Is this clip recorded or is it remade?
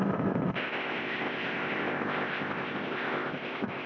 remade